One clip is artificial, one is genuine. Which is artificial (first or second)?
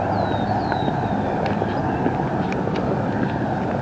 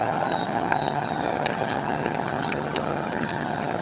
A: second